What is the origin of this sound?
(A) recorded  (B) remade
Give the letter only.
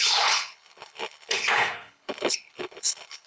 B